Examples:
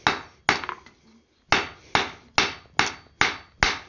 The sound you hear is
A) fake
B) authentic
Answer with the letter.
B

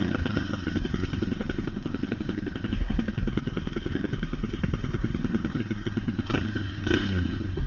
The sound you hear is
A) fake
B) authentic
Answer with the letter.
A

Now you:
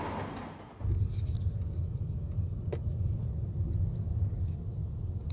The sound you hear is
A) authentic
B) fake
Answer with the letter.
A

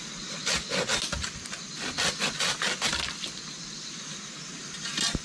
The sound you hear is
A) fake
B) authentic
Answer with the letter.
B